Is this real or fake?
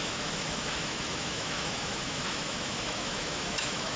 fake